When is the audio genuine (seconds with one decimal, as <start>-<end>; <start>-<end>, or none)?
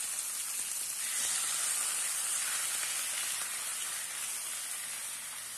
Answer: 0.0-5.6